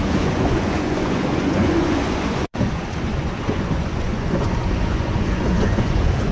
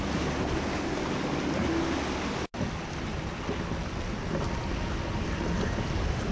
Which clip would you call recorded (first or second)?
second